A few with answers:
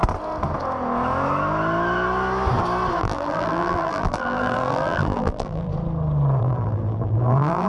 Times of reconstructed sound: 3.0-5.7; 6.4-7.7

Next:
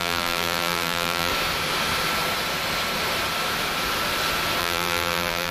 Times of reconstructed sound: 0.0-1.3; 4.6-5.5